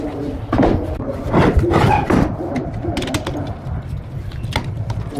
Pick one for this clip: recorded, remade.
recorded